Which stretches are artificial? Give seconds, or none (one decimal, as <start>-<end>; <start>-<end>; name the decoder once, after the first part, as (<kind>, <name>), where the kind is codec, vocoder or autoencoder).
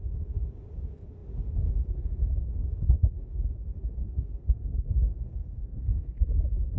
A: 4.0-6.1 (codec, SNAC)